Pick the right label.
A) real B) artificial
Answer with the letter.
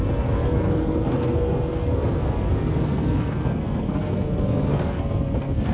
B